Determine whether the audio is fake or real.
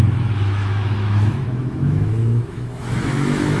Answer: fake